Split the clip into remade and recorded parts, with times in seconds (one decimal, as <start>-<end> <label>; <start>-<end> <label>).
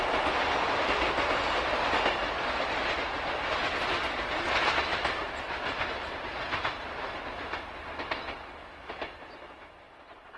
0.0-10.4 recorded